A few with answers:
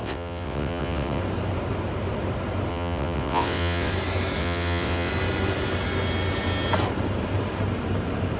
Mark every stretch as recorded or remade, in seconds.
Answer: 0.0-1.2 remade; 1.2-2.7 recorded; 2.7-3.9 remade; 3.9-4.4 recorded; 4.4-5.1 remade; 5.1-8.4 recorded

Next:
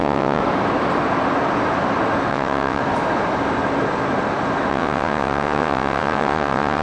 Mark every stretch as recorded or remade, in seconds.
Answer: 0.0-0.4 remade; 0.4-2.3 recorded; 2.3-2.8 remade; 2.8-4.7 recorded; 4.7-6.8 remade

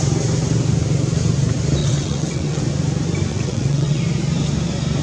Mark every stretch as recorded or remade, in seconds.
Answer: 0.0-1.8 recorded; 1.8-2.6 remade; 2.6-3.3 recorded; 3.3-4.0 remade; 4.0-5.0 recorded

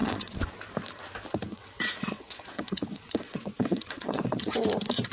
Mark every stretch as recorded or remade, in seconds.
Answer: 0.0-0.5 remade; 0.5-1.5 recorded; 1.5-4.6 remade; 4.6-5.1 recorded

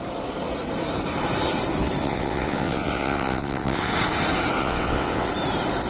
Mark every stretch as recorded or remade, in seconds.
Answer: 0.0-2.0 recorded; 2.0-3.9 remade; 3.9-4.6 recorded; 4.6-5.3 remade; 5.3-5.9 recorded